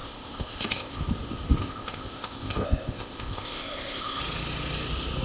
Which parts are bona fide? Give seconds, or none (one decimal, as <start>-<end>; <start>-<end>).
1.0-1.6; 4.2-5.2

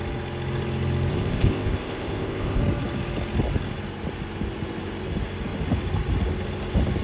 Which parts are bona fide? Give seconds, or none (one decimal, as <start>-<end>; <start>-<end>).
0.0-1.1; 2.6-7.0

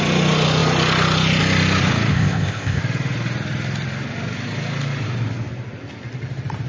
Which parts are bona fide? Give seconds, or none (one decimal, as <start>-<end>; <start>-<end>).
0.0-2.1; 2.8-6.7